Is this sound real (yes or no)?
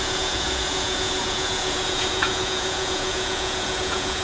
no